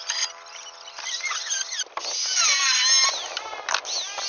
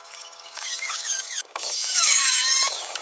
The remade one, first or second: second